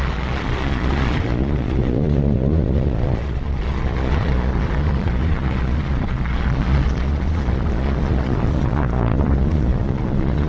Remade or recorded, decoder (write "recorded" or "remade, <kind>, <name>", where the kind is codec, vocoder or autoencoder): remade, vocoder, Vocos